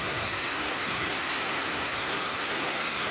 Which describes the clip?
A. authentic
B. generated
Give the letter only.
B